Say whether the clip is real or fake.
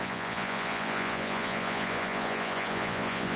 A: fake